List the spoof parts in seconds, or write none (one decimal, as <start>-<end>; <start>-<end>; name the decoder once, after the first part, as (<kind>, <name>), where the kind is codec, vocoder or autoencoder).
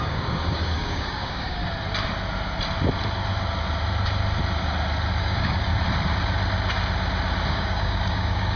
0.0-1.6 (codec, DAC); 5.2-5.7; 7.5-8.6